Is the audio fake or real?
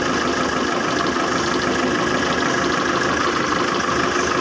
real